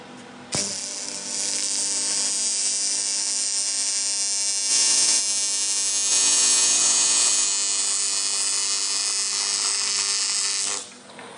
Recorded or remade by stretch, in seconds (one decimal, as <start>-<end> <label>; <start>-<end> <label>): 0.0-4.7 recorded; 4.7-5.2 remade; 5.2-6.1 recorded; 6.1-7.3 remade; 7.3-11.4 recorded